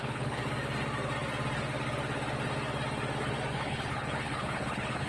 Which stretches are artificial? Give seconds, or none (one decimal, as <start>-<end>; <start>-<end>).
0.0-0.4; 3.5-5.1